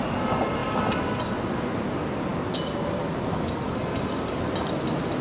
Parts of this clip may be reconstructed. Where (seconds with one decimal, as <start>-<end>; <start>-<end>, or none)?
none

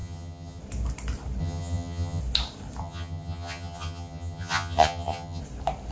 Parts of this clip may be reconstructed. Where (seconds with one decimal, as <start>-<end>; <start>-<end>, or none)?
0.0-0.6; 1.4-2.2; 2.8-5.4